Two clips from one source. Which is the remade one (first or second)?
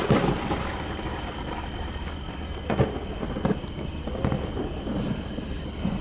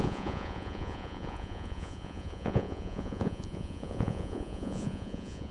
second